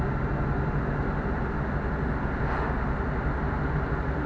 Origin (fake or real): real